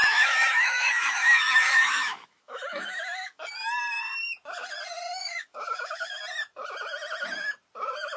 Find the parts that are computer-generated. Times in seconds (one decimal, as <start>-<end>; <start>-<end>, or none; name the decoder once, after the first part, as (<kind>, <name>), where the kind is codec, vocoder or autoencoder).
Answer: 0.0-3.5 (autoencoder, DAC-VAE); 5.1-6.2